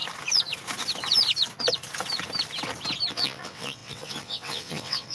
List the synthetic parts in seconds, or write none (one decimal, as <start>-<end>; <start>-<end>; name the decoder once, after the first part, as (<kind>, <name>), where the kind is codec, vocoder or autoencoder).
3.1-5.1 (vocoder, WaveNeXt)